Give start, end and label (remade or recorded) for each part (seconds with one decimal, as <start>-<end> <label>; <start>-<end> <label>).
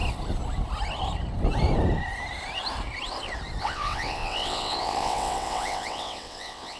0.0-3.6 recorded; 3.6-6.8 remade